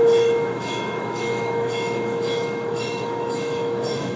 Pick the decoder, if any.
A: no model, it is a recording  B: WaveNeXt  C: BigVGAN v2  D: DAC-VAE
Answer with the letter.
D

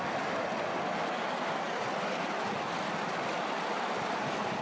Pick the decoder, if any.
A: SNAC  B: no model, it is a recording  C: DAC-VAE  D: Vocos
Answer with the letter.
B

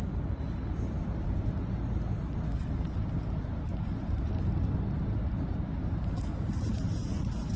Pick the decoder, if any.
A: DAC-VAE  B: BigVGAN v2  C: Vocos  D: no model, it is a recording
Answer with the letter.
D